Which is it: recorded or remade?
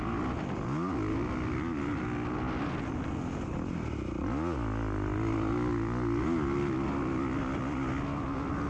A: recorded